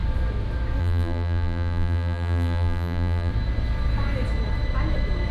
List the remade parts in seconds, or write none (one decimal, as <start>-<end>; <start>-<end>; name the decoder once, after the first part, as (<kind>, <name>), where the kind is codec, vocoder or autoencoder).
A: 0.8-3.3 (vocoder, BigVGAN v2)